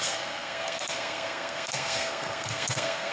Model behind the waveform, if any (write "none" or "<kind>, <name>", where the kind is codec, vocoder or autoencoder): codec, SNAC